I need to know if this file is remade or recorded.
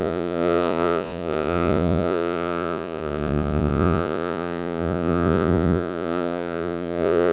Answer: remade